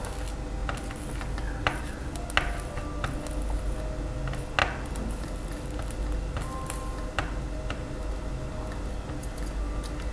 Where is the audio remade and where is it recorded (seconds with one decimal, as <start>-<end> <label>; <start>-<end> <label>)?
0.0-10.1 recorded